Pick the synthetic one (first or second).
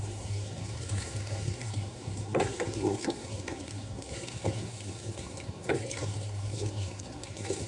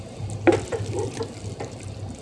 first